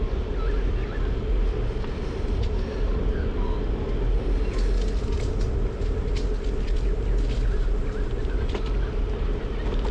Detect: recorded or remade recorded